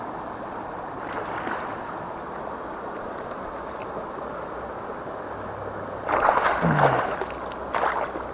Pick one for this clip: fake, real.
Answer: real